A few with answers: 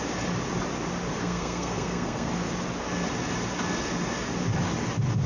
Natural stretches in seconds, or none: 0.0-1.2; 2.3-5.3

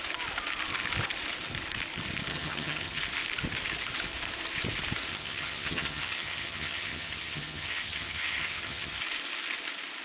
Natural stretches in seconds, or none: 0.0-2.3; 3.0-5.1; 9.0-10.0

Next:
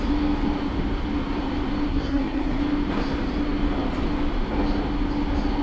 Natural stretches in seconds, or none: 0.0-1.9; 2.6-5.6

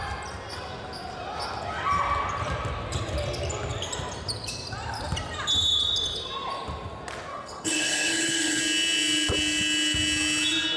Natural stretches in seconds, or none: 0.0-7.3; 8.6-10.8

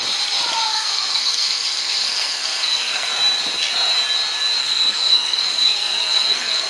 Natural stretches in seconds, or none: 0.0-0.7; 3.1-4.6